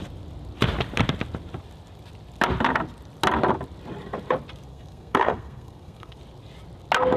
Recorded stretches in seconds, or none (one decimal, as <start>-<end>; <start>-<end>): 0.0-4.7; 6.2-7.2